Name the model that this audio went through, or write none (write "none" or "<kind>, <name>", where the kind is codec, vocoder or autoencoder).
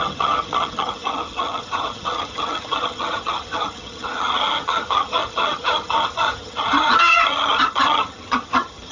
vocoder, HiFi-GAN